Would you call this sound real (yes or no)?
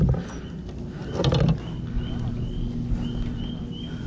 yes